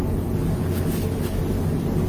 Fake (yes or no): no